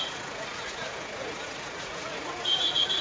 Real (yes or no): no